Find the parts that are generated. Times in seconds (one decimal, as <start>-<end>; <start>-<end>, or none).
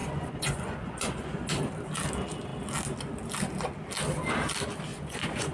0.0-1.5; 4.9-5.5